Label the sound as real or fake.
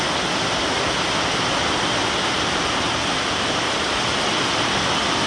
real